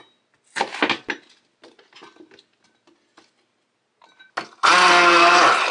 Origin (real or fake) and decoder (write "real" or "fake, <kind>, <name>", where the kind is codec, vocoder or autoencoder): real